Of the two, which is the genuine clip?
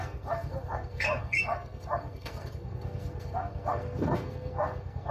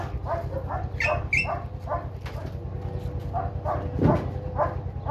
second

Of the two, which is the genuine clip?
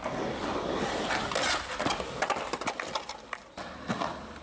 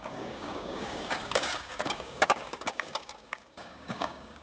first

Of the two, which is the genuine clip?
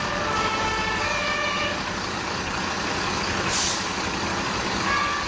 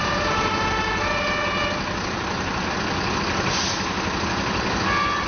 second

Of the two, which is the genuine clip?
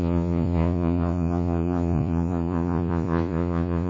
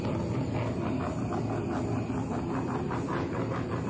second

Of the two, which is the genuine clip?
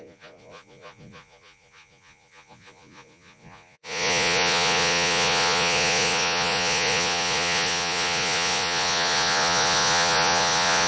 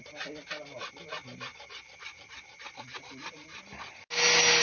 second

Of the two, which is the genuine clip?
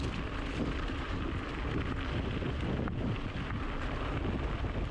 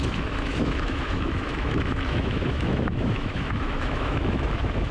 first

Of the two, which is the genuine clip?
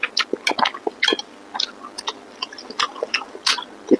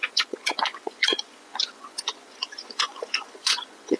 first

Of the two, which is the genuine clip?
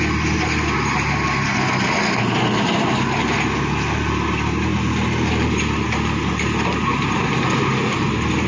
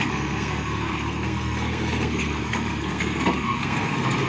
first